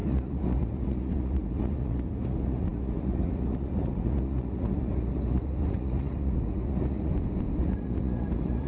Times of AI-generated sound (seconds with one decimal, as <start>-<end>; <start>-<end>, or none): 0.0-7.1; 7.6-8.7